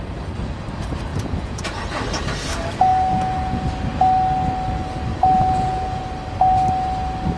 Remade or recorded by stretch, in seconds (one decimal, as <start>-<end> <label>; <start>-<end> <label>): 0.0-1.1 recorded; 1.1-1.8 remade; 1.8-2.9 recorded; 2.9-3.7 remade; 3.7-5.1 recorded; 5.1-6.0 remade; 6.0-7.4 recorded